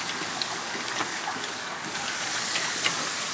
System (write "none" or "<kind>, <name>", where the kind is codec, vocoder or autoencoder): codec, DAC